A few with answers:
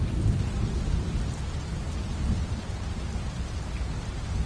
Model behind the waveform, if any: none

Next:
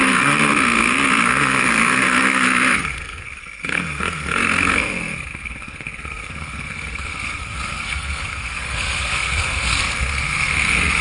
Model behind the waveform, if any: codec, SNAC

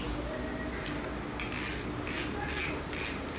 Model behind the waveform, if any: none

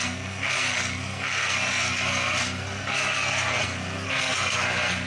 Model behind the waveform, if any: codec, SNAC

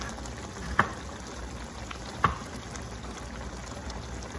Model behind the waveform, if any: none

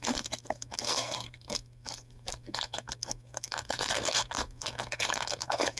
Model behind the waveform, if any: codec, SNAC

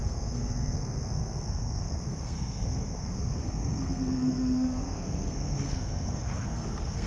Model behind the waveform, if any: codec, SNAC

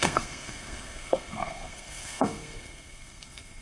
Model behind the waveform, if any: codec, SNAC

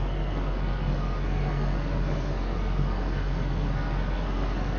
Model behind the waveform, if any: codec, SNAC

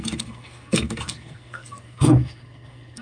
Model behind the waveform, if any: codec, SNAC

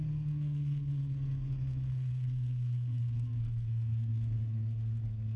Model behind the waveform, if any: codec, SNAC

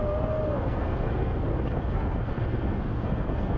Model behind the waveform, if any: codec, SNAC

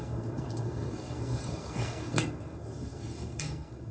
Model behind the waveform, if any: codec, SNAC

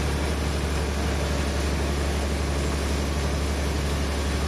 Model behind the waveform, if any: none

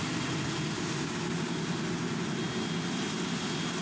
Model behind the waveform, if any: none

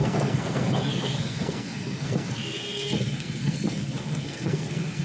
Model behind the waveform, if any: codec, SNAC